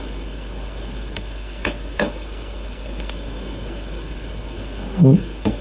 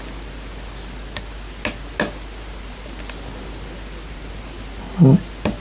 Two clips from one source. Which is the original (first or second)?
second